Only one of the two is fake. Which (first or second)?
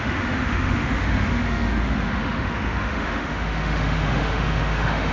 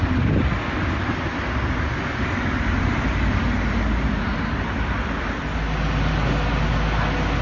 first